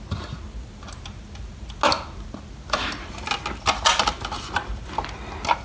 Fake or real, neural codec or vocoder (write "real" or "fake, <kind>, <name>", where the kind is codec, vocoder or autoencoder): real